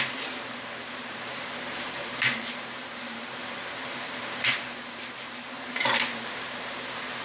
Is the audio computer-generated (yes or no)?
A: yes